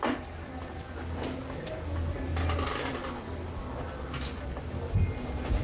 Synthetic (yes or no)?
no